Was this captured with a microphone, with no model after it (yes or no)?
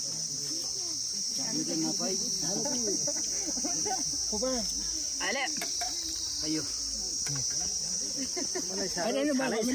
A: yes